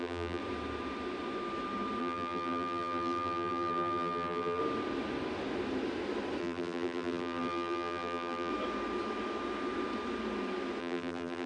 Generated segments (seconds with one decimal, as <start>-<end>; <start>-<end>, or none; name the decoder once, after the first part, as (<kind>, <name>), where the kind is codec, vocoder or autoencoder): 0.0-0.4 (vocoder, BigVGAN v2); 2.0-4.6; 6.4-8.5; 10.8-11.5

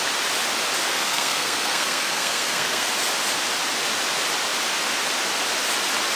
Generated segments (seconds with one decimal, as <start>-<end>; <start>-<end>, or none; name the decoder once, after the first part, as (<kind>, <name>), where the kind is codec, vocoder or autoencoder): 0.9-2.9 (codec, SNAC)

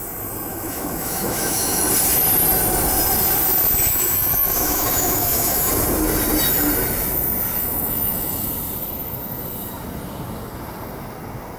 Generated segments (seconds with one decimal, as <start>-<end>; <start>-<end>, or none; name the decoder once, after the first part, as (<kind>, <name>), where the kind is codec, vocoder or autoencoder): 0.5-1.8 (autoencoder, DAC-VAE); 3.9-5.7; 7.6-8.5

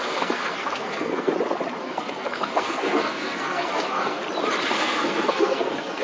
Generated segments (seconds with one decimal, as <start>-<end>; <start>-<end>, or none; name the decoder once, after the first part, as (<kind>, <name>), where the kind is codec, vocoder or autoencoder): 0.0-1.3 (codec, SNAC); 1.8-4.2; 4.7-6.0